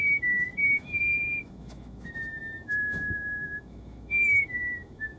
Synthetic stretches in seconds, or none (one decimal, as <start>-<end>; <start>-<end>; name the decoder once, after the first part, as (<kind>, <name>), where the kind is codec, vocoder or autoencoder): 0.0-5.2 (autoencoder, DAC-VAE)